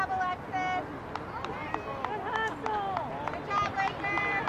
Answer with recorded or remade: recorded